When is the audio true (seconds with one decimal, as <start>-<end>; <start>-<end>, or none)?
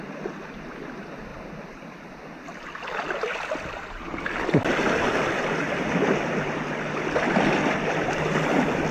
0.0-8.9